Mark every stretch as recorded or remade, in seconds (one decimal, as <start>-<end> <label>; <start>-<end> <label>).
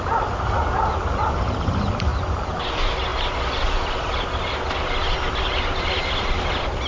0.0-6.9 recorded